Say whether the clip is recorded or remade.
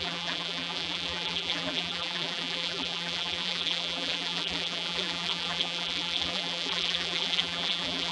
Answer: remade